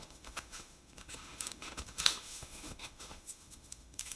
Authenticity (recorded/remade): remade